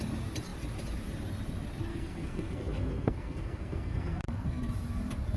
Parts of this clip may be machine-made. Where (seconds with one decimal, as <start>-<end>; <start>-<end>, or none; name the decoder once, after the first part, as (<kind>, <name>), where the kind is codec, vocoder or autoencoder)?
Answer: 1.9-4.7 (codec, SNAC)